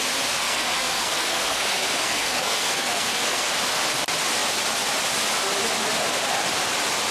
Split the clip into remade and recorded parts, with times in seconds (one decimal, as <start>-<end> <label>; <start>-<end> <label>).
0.0-0.4 recorded; 0.4-3.5 remade; 3.5-7.1 recorded